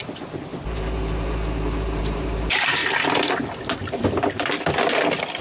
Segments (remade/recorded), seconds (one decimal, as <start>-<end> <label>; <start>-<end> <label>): 0.0-2.8 remade; 2.8-5.4 recorded